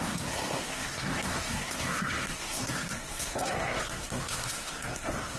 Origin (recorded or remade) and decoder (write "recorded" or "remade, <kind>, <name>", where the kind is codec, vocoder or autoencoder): remade, codec, SNAC